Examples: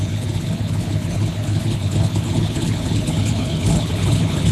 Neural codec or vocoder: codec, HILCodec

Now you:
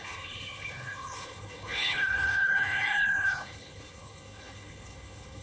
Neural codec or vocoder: codec, HILCodec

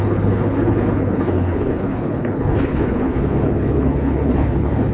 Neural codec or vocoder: codec, HILCodec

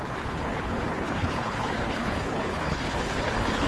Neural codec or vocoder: codec, HILCodec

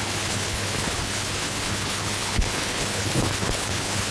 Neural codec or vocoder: codec, HILCodec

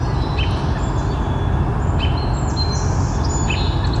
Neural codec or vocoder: none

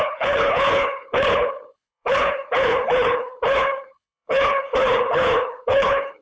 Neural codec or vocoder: codec, HILCodec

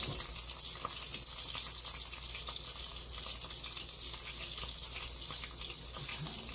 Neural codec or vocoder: none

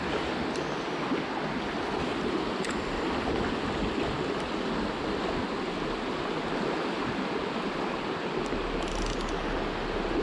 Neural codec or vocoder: none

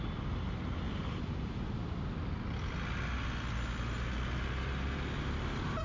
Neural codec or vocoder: none